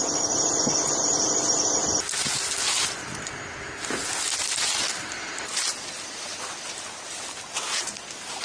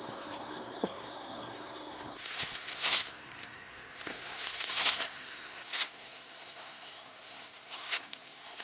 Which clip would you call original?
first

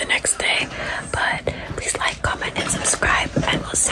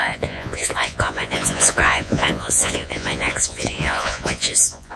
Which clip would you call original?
first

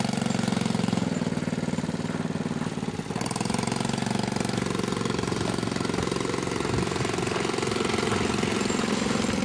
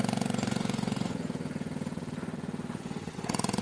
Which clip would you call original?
first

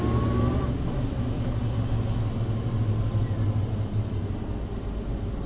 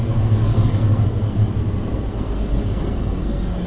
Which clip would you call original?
first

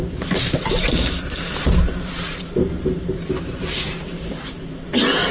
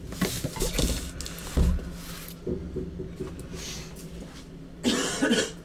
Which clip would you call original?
second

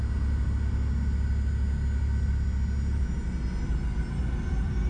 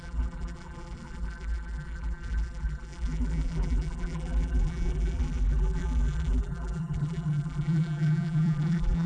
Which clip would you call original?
first